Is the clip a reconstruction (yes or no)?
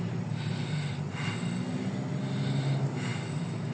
no